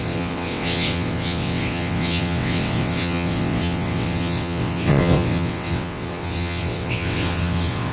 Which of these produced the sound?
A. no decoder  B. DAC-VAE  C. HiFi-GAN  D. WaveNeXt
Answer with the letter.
D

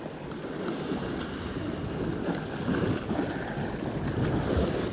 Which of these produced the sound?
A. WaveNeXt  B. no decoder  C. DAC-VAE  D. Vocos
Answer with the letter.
B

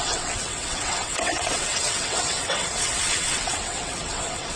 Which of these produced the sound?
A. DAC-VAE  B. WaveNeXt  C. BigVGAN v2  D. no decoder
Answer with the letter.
B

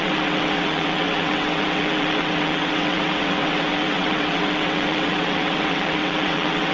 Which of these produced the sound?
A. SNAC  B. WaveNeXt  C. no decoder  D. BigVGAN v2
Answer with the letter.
B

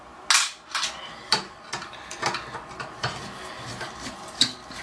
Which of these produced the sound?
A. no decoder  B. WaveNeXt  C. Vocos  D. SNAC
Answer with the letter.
A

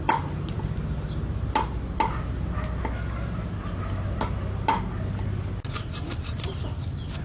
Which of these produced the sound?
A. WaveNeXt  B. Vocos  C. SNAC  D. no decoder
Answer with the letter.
D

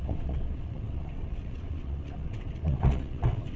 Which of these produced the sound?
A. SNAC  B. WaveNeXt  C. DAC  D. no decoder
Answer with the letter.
B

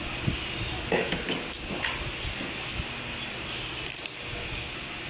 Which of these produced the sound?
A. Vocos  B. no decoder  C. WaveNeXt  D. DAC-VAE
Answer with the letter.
B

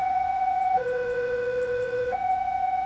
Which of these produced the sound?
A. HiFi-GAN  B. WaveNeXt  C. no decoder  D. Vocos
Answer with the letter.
B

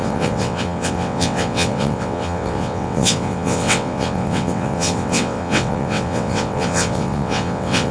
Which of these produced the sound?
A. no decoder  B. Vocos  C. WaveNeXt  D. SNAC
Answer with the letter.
C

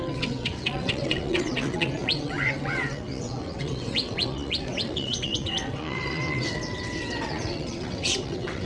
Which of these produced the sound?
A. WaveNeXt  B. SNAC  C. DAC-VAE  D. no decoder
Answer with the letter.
A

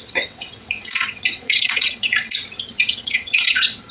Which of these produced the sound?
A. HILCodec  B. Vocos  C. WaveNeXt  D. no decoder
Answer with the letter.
C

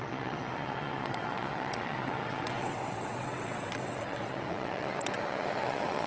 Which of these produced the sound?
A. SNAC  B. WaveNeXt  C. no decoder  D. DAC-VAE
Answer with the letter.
B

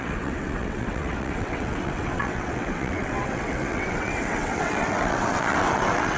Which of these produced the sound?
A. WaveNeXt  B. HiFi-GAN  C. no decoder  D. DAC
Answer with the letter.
A